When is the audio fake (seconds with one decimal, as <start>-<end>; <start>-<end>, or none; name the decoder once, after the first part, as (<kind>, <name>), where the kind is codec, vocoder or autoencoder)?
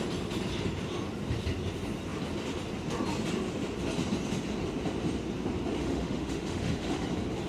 5.8-7.1 (autoencoder, DAC-VAE)